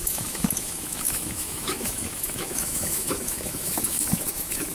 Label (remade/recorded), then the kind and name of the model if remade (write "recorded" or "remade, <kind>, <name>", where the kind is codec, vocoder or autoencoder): remade, autoencoder, DAC-VAE